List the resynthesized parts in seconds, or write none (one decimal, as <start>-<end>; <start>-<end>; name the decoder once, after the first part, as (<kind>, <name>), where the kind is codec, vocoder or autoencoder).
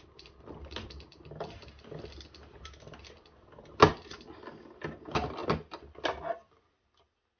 none